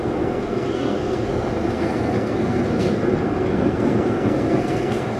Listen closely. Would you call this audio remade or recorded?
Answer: remade